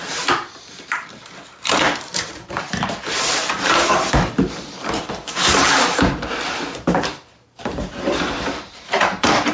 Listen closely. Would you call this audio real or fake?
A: fake